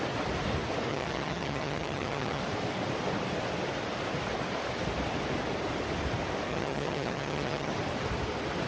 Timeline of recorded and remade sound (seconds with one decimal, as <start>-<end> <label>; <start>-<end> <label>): 0.0-0.9 recorded; 0.9-2.4 remade; 2.4-6.5 recorded; 6.5-7.7 remade; 7.7-8.7 recorded